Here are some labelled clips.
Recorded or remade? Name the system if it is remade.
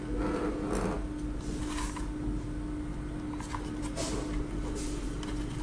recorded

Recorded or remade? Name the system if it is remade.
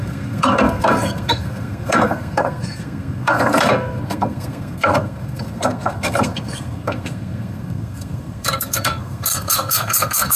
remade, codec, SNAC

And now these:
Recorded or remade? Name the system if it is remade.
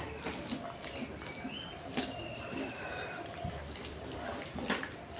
recorded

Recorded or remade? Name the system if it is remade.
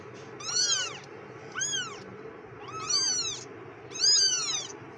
recorded